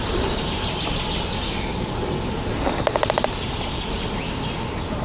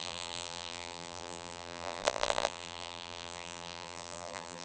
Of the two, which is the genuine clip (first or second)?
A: first